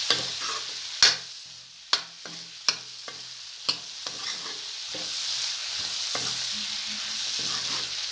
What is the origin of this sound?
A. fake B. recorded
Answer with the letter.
B